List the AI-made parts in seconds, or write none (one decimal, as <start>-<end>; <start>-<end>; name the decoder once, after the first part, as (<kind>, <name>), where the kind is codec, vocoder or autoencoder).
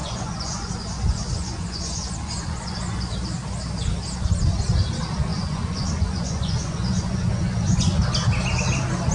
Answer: 0.0-3.1 (vocoder, Vocos); 5.3-8.0